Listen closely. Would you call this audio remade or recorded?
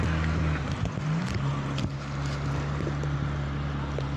recorded